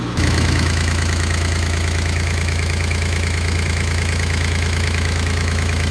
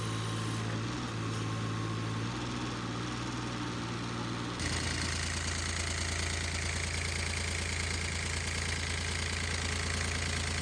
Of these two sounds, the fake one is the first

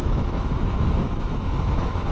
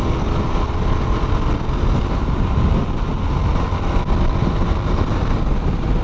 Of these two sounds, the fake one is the first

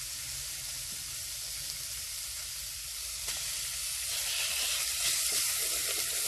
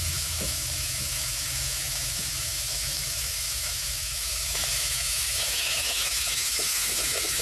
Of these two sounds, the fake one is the second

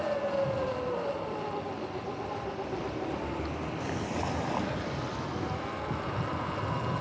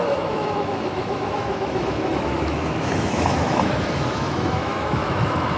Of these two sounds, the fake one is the second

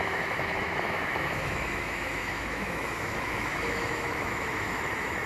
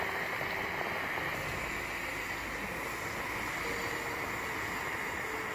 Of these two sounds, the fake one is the first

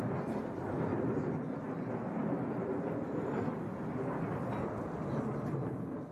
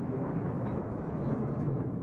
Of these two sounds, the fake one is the second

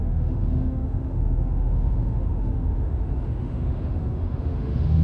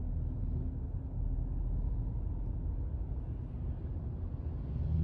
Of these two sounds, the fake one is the first